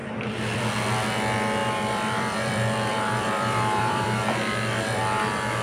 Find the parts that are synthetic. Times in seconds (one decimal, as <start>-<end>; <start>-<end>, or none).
0.0-0.7; 1.6-5.0